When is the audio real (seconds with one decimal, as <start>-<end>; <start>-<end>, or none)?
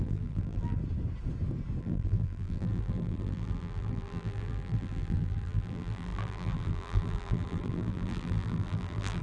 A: 0.8-1.8